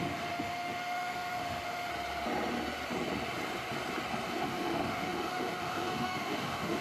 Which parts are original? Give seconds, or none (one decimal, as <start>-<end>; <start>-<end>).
1.9-4.4